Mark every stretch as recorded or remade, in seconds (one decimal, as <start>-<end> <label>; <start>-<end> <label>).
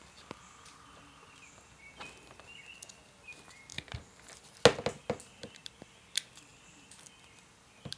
0.0-8.0 recorded